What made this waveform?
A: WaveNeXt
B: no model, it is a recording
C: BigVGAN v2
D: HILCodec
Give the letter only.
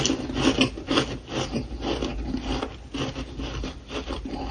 B